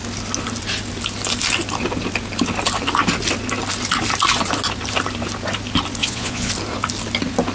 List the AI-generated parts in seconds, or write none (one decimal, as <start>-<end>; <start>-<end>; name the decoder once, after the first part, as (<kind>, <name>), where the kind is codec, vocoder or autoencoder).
6.0-6.5 (vocoder, Vocos)